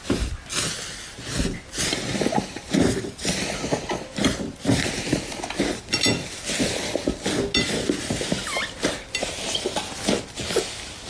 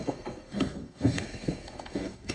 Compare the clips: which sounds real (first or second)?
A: first